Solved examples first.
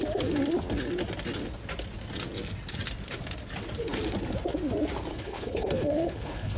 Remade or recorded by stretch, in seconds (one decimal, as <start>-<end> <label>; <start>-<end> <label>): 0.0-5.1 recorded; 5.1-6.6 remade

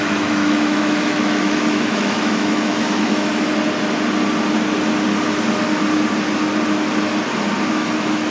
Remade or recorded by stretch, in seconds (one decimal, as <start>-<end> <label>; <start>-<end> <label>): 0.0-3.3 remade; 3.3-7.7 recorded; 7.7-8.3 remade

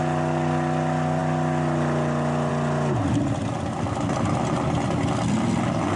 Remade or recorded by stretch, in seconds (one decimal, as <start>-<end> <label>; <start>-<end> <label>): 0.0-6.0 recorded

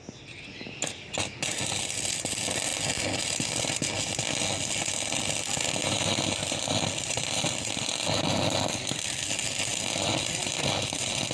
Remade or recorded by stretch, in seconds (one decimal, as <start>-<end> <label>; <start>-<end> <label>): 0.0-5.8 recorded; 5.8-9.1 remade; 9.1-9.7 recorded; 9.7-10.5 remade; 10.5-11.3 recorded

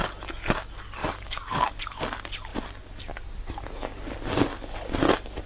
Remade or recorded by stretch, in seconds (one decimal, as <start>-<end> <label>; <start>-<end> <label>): 0.0-1.0 recorded; 1.0-1.7 remade; 1.7-5.5 recorded

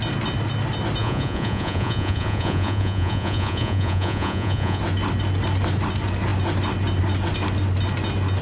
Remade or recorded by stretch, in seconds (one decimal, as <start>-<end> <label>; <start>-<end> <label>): 0.0-1.0 recorded; 1.0-4.8 remade; 4.8-8.4 recorded

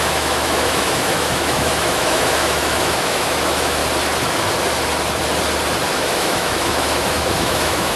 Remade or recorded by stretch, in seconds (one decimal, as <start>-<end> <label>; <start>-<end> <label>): 0.0-3.8 remade; 3.8-5.9 recorded; 5.9-8.0 remade

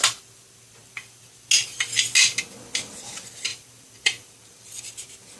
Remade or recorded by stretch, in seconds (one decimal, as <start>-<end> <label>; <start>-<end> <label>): 0.0-3.5 recorded; 3.5-4.7 remade; 4.7-5.4 recorded